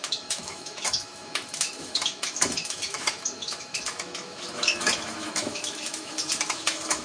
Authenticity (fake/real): fake